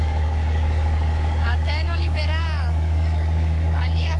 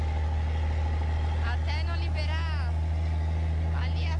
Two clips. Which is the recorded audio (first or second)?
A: second